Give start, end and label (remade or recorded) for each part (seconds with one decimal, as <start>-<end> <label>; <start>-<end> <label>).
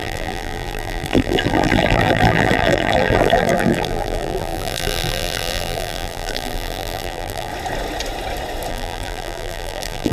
0.0-7.5 remade; 7.5-8.7 recorded; 8.7-10.1 remade